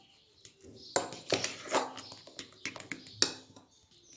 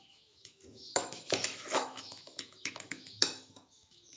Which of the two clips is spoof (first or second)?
second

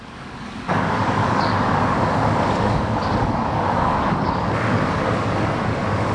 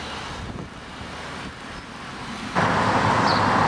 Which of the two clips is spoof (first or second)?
first